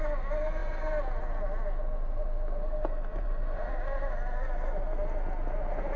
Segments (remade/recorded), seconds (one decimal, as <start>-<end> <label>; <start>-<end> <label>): 0.0-3.1 recorded; 3.1-3.7 remade; 3.7-6.0 recorded